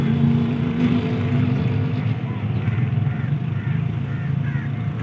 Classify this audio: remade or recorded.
recorded